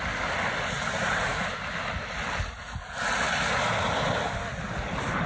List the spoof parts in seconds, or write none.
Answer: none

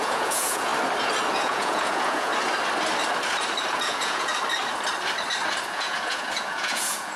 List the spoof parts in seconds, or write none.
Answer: 0.0-0.7 (vocoder, Vocos); 1.3-2.3; 3.7-4.3; 5.7-7.2

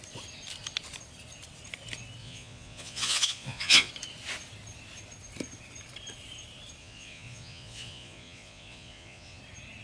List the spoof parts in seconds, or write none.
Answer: 2.2-3.9 (vocoder, Vocos); 6.8-9.4

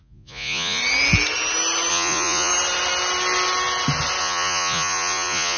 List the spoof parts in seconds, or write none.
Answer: 0.0-0.8 (vocoder, Vocos); 1.9-2.5; 4.2-5.6